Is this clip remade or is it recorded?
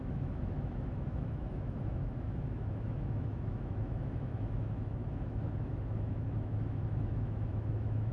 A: remade